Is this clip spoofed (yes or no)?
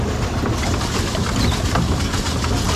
no